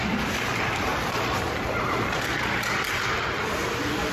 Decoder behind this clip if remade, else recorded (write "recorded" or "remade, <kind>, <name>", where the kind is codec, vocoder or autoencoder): remade, vocoder, BigVGAN v2